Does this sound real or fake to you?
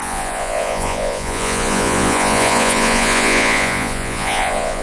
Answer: fake